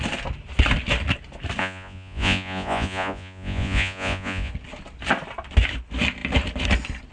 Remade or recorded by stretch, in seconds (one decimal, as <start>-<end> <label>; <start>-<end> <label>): 0.0-1.6 recorded; 1.6-4.5 remade; 4.5-7.1 recorded